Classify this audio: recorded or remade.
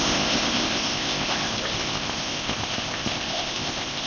remade